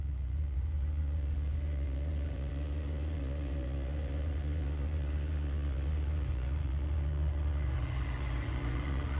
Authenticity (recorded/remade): remade